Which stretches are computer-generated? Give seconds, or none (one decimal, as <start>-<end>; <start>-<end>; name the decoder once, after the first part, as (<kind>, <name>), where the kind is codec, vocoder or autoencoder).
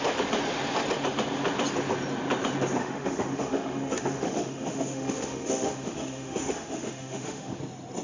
2.8-7.6 (autoencoder, DAC-VAE)